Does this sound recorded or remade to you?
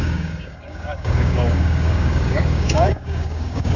remade